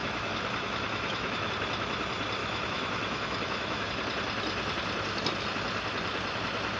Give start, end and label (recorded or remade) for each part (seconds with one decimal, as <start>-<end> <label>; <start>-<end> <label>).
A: 0.0-1.5 remade; 1.5-2.4 recorded; 2.4-3.9 remade; 3.9-6.8 recorded